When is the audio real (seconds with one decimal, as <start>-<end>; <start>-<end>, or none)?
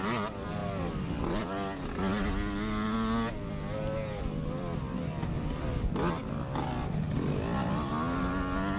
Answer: 0.0-8.8